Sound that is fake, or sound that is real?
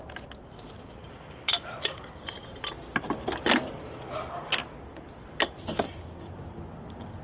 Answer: real